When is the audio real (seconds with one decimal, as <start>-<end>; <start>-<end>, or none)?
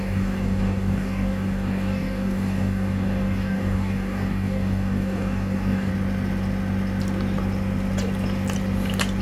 5.9-9.2